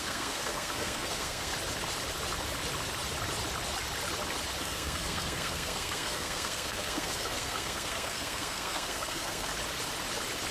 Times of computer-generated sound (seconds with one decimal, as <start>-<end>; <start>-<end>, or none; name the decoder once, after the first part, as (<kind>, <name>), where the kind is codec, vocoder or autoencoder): 0.0-1.5 (codec, SNAC); 4.6-9.5